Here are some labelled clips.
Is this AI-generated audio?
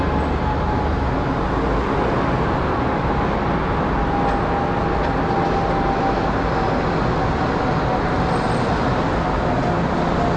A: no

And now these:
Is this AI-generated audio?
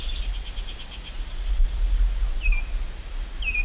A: no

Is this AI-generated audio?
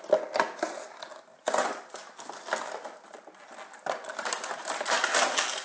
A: no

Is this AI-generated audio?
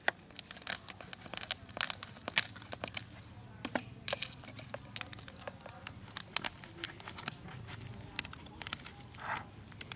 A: no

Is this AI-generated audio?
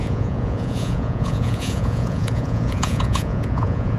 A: yes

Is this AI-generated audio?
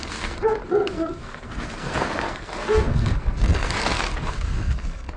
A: yes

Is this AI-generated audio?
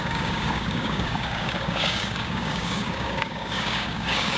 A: yes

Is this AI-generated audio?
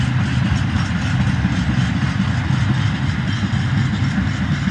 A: no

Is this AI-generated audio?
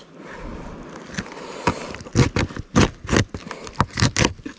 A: no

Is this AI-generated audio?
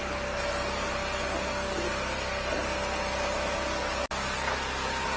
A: no